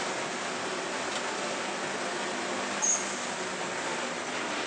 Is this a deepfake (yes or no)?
no